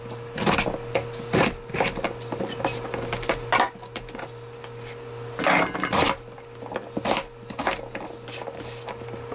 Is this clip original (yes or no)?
yes